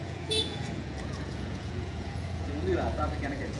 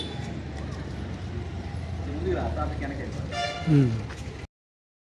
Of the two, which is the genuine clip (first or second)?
second